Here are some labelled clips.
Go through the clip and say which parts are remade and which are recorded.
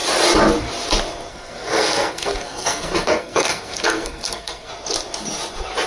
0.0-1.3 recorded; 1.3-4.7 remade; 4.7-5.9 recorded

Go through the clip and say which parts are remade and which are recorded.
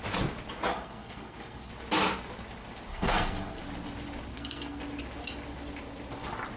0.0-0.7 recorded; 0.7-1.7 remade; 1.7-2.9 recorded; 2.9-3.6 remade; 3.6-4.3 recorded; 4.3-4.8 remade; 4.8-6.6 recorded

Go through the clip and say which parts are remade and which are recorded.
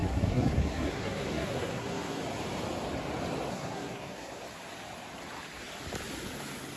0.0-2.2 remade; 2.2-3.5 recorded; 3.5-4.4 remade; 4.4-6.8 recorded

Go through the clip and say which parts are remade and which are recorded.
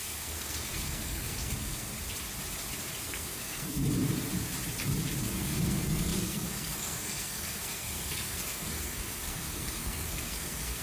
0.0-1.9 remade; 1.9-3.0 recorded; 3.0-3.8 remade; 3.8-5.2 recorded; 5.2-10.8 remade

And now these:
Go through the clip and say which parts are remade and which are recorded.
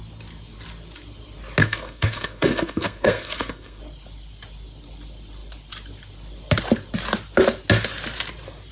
0.0-1.6 recorded; 1.6-3.8 remade; 3.8-8.7 recorded